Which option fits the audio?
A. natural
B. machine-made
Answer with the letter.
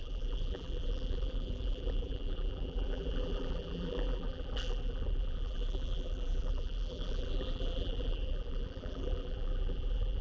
B